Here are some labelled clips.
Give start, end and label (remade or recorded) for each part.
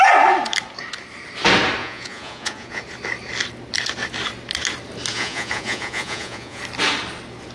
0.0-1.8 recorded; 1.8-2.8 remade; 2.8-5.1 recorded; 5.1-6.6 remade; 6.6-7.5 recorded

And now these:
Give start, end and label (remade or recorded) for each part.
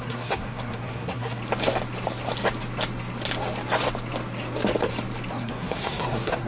0.0-1.4 remade; 1.4-5.3 recorded; 5.3-6.5 remade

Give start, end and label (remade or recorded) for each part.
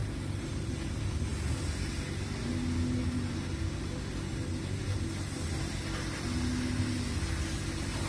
0.0-0.7 remade; 0.7-8.1 recorded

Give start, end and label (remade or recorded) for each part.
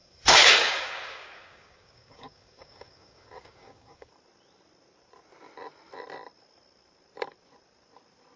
0.0-4.1 remade; 4.1-8.4 recorded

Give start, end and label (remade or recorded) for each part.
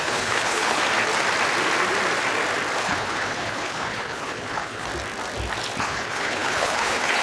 0.0-0.8 remade; 0.8-2.8 recorded; 2.8-4.9 remade; 4.9-5.8 recorded; 5.8-7.2 remade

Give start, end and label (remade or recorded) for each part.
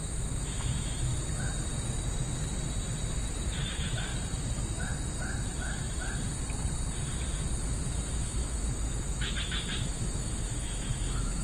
0.0-1.1 remade; 1.1-3.3 recorded; 3.3-4.1 remade; 4.1-7.6 recorded; 7.6-11.4 remade